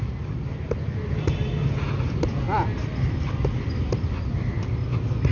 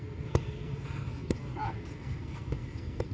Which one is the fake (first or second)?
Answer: second